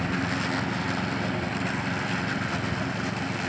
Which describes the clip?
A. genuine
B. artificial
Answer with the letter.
A